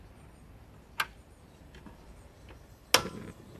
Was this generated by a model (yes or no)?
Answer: no